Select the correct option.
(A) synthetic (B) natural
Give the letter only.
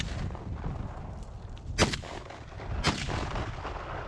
B